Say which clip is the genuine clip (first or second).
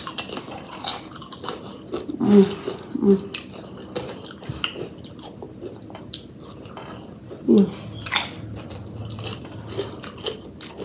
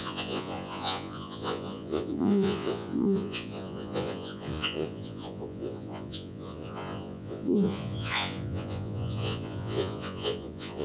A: first